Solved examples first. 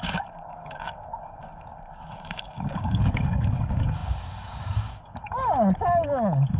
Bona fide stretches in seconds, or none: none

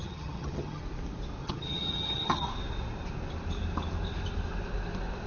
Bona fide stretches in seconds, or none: 0.8-1.4; 2.5-5.3

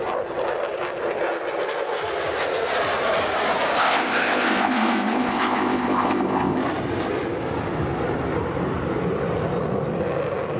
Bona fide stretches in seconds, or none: 0.0-3.8; 6.6-10.6